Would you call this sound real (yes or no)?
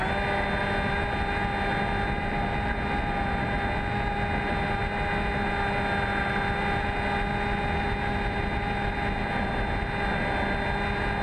yes